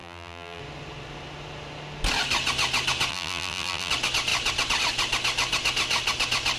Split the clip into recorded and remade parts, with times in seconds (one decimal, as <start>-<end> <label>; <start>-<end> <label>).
0.0-0.6 remade; 0.6-3.1 recorded; 3.1-3.9 remade; 3.9-6.6 recorded